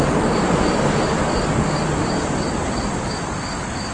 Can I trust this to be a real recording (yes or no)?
yes